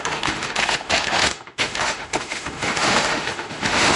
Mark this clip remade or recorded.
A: remade